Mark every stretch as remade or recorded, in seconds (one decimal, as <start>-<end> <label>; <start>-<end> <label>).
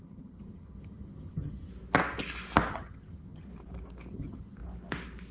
0.0-1.7 remade; 1.7-2.7 recorded; 2.7-3.5 remade; 3.5-4.1 recorded; 4.1-4.6 remade; 4.6-5.3 recorded